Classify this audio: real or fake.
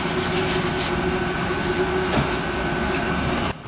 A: real